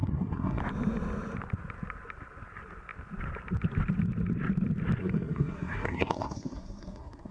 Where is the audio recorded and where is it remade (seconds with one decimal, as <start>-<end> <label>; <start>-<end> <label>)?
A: 0.0-0.6 remade; 0.6-5.0 recorded; 5.0-7.3 remade